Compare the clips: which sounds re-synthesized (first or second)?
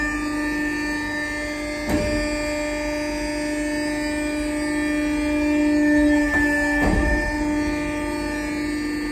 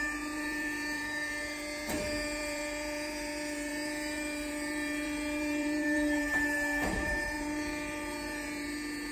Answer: second